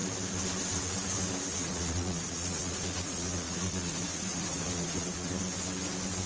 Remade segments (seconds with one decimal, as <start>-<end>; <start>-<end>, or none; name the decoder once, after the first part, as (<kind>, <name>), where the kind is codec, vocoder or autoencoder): 1.5-5.3 (vocoder, Vocos)